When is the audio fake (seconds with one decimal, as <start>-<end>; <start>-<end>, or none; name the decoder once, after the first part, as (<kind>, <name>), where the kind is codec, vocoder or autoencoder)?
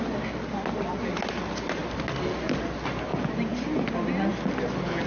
none